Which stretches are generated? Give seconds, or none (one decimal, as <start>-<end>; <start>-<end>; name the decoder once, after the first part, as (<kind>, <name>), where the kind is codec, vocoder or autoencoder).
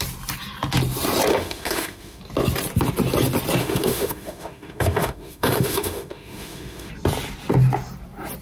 1.3-2.2 (autoencoder, DAC-VAE); 3.6-6.9